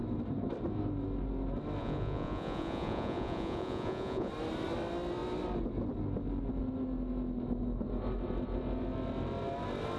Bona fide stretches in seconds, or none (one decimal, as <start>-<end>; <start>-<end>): 0.0-1.8; 4.3-10.0